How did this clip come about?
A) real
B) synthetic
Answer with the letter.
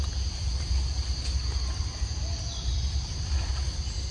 A